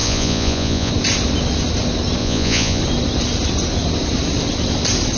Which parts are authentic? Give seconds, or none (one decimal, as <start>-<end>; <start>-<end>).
0.9-2.2; 2.8-5.2